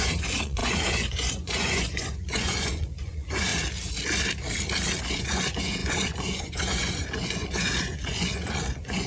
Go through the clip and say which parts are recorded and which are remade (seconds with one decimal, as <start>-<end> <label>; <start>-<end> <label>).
0.0-3.5 remade; 3.5-5.1 recorded; 5.1-9.1 remade